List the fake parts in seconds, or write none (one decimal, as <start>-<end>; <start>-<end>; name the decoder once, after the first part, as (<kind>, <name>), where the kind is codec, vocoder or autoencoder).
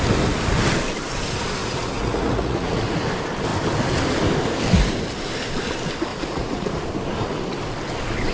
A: 1.6-2.8 (vocoder, Vocos); 6.1-6.7